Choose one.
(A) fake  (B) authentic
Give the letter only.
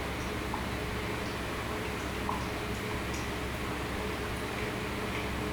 B